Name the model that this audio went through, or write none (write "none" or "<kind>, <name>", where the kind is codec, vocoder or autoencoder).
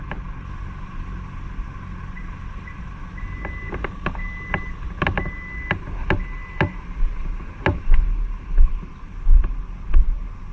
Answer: none